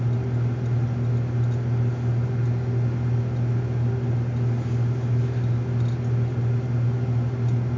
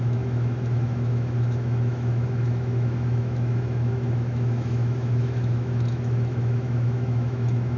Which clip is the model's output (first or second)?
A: second